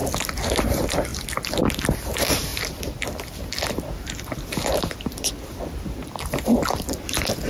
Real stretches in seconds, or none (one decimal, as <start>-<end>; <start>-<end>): 0.0-0.6; 1.1-2.1